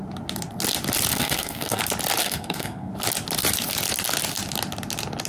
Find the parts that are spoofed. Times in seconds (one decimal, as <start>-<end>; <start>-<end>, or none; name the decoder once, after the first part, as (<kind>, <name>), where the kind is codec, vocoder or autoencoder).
1.1-1.8 (codec, SNAC); 2.2-2.9